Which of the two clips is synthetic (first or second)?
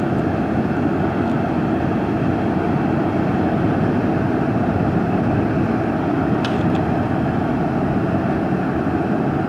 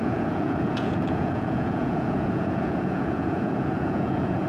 second